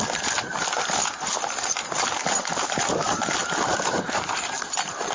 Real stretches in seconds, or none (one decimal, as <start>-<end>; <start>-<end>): 0.0-2.5; 4.5-5.1